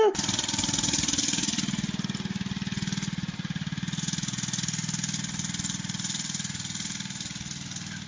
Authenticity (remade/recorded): recorded